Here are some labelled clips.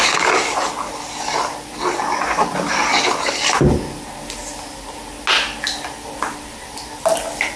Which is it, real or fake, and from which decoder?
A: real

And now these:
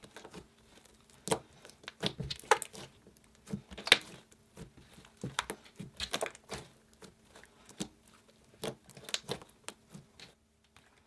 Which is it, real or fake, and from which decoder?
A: real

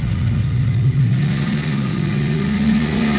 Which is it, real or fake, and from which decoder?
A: fake, vocoder, Vocos